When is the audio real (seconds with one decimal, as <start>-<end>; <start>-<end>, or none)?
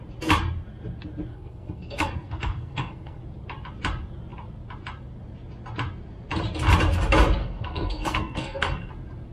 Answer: 0.0-1.3; 3.2-7.4; 8.9-9.3